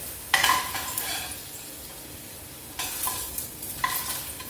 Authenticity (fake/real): real